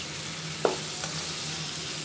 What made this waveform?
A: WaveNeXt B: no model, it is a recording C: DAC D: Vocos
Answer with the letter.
B